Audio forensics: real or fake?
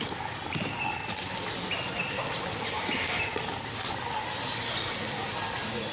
real